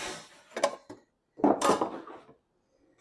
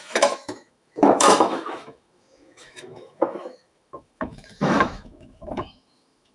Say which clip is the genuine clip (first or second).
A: first